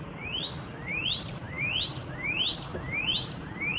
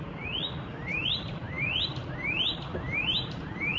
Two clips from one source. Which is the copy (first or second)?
second